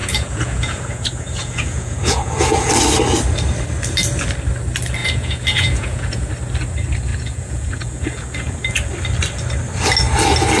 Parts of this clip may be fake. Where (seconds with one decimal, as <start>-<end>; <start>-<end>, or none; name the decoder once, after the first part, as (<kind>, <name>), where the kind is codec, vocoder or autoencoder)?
0.0-2.7 (vocoder, Vocos); 5.0-6.3; 7.1-8.6